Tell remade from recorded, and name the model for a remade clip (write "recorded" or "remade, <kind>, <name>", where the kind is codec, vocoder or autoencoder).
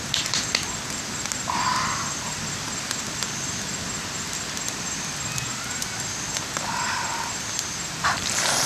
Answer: recorded